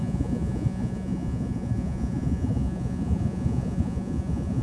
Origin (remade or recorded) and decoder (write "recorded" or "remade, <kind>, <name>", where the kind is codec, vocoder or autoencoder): remade, vocoder, Vocos